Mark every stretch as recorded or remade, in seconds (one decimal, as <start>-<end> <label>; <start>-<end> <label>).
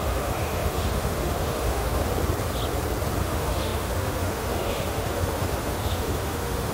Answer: 0.0-2.1 remade; 2.1-3.2 recorded; 3.2-6.7 remade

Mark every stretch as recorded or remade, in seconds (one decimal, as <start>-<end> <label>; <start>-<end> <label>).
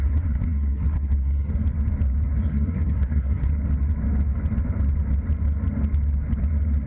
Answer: 0.0-1.5 remade; 1.5-2.5 recorded; 2.5-3.5 remade; 3.5-6.9 recorded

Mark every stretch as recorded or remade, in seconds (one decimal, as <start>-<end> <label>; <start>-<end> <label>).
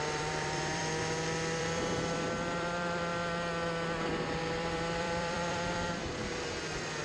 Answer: 0.0-0.8 remade; 0.8-1.6 recorded; 1.6-3.1 remade; 3.1-4.4 recorded; 4.4-6.2 remade; 6.2-7.0 recorded